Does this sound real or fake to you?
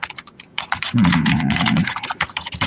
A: fake